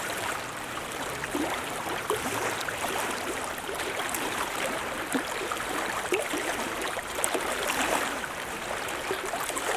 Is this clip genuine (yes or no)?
no